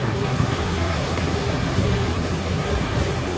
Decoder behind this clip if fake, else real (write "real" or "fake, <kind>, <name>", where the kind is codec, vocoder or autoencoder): fake, codec, SNAC